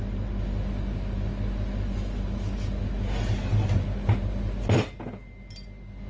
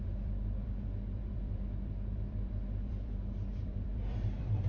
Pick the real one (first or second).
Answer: first